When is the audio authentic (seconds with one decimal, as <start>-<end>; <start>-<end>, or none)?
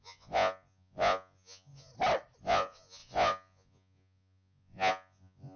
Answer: 1.9-2.4